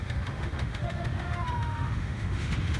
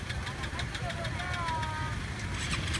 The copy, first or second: first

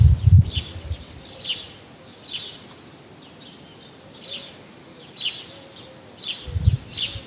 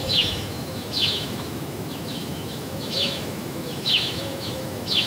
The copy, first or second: second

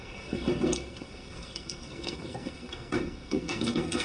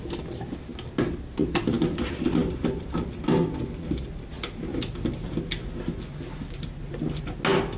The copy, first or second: first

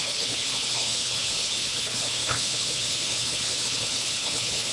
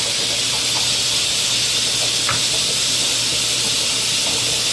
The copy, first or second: first